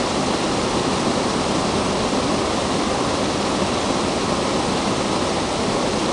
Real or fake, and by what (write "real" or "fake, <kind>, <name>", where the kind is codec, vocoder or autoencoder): real